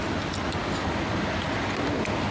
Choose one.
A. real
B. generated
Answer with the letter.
A